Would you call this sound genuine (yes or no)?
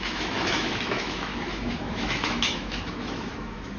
no